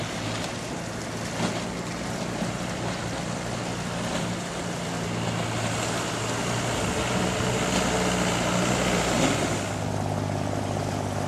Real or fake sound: real